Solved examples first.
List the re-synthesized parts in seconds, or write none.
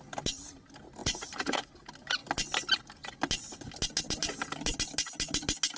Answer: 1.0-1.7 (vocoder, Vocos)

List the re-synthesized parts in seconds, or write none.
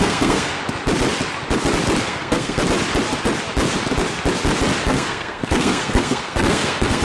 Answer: 0.0-0.6 (codec, SNAC); 2.0-2.6; 4.8-7.0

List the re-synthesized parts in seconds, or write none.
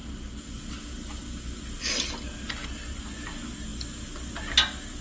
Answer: none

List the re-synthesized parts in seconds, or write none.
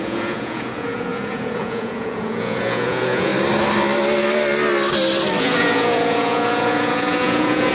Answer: 0.0-3.3 (vocoder, Vocos); 5.4-7.7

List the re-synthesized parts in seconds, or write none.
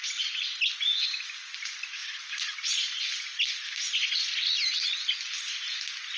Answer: none